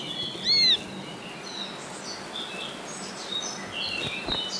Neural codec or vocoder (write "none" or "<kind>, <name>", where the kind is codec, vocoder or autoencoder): none